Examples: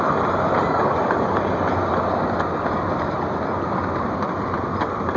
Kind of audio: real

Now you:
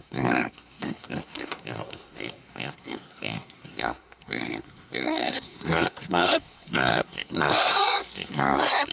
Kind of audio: fake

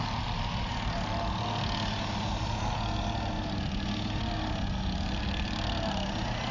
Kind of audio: real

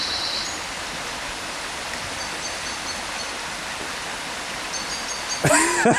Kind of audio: real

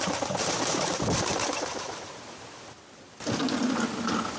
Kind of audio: real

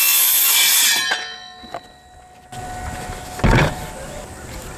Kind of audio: real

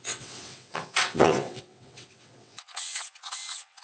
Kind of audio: fake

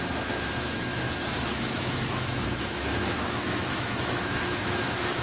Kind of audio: fake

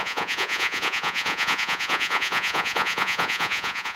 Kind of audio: fake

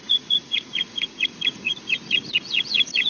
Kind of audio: fake